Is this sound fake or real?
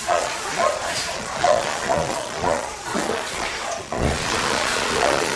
fake